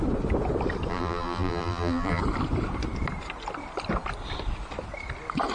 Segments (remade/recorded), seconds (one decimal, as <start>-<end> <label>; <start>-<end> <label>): 0.0-0.9 recorded; 0.9-2.2 remade; 2.2-5.5 recorded